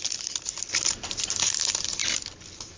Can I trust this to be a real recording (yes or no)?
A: yes